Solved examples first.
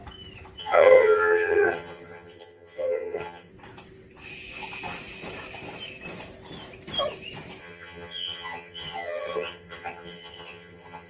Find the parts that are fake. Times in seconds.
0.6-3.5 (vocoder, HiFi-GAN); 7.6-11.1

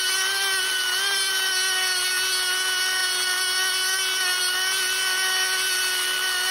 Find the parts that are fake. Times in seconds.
none

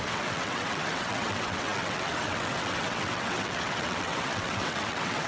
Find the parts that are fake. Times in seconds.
0.0-5.3 (vocoder, WaveNeXt)

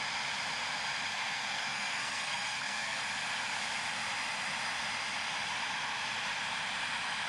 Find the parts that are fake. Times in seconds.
1.1-3.0 (codec, SNAC)

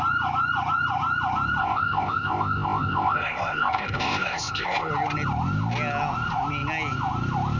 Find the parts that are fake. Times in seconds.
1.6-4.9 (codec, ZipCodec)

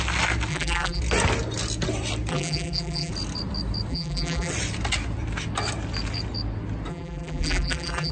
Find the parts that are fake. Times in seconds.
0.5-1.0 (vocoder, BigVGAN v2); 2.3-3.1; 3.9-4.5; 6.9-8.1

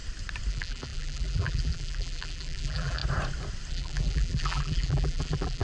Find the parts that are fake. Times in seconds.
0.5-3.0 (vocoder, BigVGAN v2); 3.7-5.6

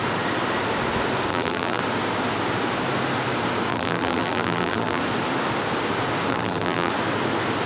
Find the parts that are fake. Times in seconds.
1.3-1.8 (vocoder, BigVGAN v2); 3.7-5.0; 6.3-6.9